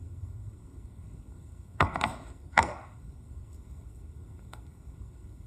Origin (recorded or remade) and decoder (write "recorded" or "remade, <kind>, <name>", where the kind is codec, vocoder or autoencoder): remade, codec, SNAC